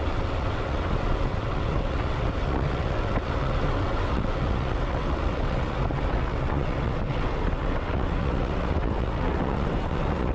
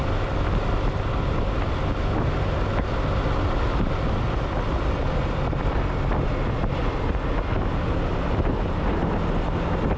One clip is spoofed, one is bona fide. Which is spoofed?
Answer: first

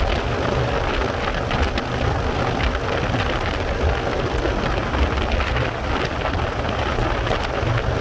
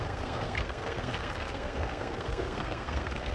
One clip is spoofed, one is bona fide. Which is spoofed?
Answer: second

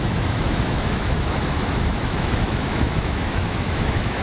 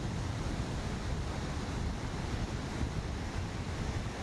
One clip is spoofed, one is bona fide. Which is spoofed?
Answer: first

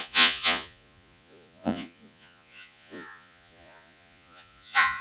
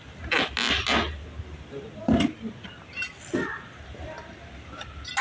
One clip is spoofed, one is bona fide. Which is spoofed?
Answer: first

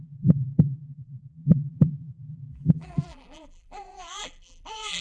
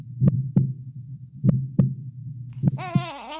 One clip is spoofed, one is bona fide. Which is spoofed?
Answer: first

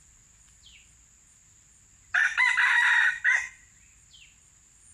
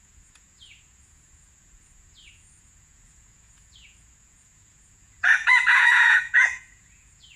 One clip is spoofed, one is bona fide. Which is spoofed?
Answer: second